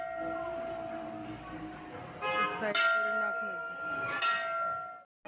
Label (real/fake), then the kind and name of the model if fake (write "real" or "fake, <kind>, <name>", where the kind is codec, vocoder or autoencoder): real